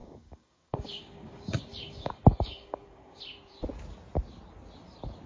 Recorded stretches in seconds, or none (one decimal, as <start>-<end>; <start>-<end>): 3.2-5.3

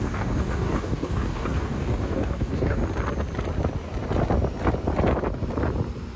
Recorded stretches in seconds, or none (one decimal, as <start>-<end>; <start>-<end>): 2.8-6.2

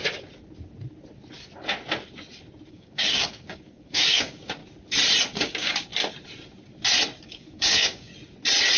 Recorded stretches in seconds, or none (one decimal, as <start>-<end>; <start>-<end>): 0.0-2.7; 4.6-5.4; 5.9-7.2; 8.1-8.8

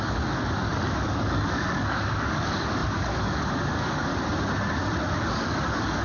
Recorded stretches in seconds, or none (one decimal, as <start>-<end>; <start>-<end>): 4.1-5.1